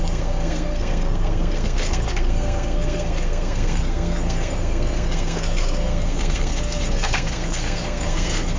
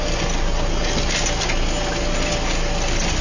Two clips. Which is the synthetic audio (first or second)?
first